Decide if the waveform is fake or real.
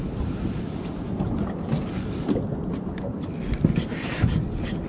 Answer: real